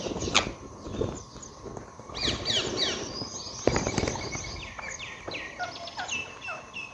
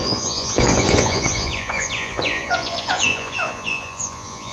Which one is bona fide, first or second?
first